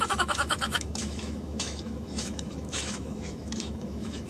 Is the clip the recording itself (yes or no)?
no